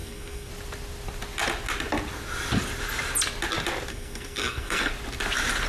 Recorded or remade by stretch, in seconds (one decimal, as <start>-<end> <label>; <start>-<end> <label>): 0.0-0.5 remade; 0.5-3.9 recorded; 3.9-4.9 remade; 4.9-5.7 recorded